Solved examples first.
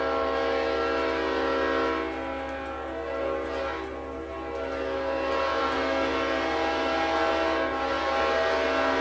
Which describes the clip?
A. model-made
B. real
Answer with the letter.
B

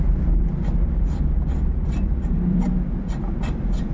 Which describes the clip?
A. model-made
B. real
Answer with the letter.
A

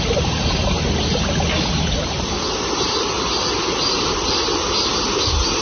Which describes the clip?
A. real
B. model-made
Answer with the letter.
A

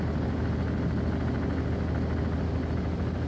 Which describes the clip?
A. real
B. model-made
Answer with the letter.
A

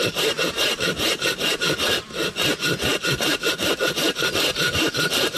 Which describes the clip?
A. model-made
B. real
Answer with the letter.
A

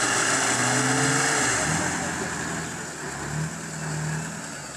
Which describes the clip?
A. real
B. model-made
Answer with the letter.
A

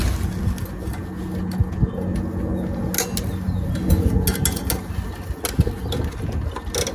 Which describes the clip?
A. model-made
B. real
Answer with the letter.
B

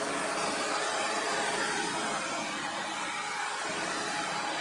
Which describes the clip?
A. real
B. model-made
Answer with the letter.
A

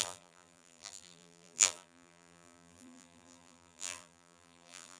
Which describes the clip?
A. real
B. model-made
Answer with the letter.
B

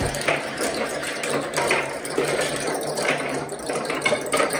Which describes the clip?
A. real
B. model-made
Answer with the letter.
B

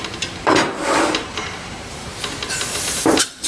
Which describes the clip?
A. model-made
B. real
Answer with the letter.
A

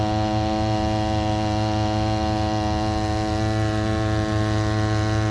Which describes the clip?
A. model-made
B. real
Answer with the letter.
B